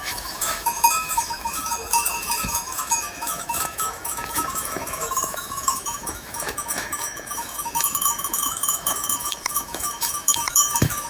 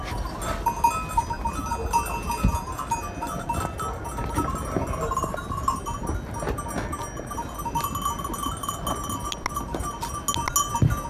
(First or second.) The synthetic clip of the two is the first